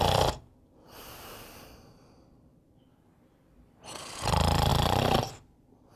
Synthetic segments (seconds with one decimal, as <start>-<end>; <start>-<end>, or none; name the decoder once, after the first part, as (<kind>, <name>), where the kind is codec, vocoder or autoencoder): 0.0-4.7 (vocoder, BigVGAN v2); 5.6-6.0